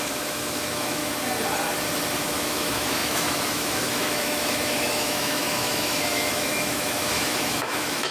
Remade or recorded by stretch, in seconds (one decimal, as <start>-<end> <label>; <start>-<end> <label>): 0.0-1.0 remade; 1.0-2.2 recorded; 2.2-8.1 remade